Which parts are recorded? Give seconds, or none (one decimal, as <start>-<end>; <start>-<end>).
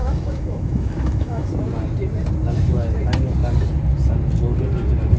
1.5-5.2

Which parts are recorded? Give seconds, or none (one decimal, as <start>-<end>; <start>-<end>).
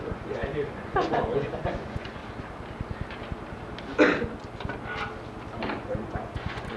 2.2-5.6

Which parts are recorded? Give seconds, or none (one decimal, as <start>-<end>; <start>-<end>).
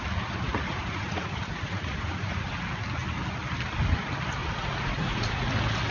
0.0-0.5; 2.5-4.4; 5.5-5.9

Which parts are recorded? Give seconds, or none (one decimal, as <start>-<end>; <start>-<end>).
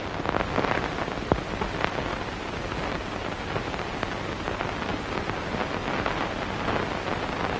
0.0-7.6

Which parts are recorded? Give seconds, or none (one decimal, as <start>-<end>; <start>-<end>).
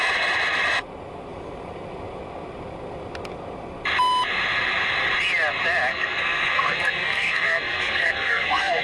0.0-5.9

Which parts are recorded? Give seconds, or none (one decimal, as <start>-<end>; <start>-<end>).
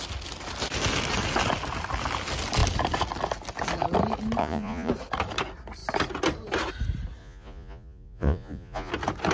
0.0-4.4; 4.9-7.2; 8.9-9.3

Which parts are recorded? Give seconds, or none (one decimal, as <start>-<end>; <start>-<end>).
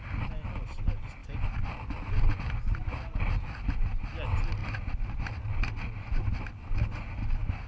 0.0-7.7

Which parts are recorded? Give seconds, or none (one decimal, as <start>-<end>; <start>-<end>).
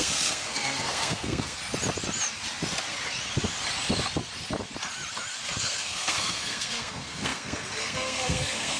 1.6-5.6